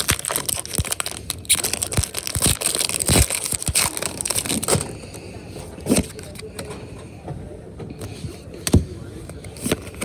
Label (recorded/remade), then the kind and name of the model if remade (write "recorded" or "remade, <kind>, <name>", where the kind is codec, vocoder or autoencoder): recorded